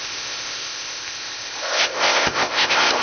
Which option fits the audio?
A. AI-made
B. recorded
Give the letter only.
A